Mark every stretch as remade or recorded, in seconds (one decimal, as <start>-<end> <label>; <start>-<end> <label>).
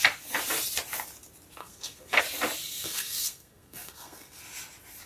0.0-1.6 recorded; 1.6-2.2 remade; 2.2-2.6 recorded; 2.6-4.4 remade; 4.4-5.1 recorded